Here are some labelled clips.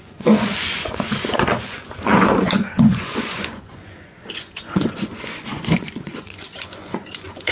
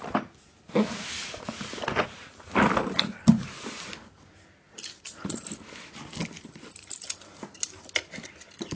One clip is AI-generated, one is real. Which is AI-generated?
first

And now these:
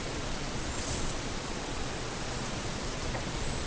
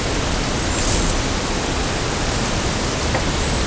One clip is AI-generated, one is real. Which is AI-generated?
first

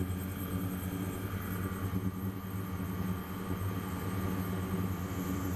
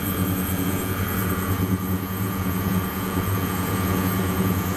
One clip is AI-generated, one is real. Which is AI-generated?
second